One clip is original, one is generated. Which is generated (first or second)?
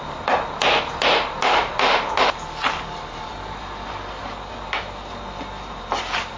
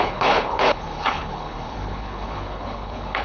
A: second